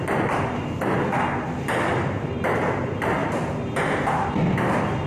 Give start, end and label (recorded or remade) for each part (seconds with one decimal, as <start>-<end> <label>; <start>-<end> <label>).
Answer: 0.0-1.9 recorded; 1.9-2.8 remade; 2.8-3.2 recorded; 3.2-4.3 remade; 4.3-5.1 recorded